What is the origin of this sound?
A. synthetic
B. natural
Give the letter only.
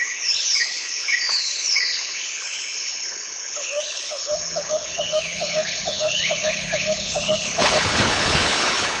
A